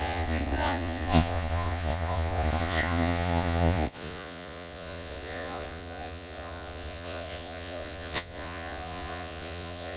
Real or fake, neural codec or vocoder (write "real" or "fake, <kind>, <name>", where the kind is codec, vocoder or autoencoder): fake, vocoder, Vocos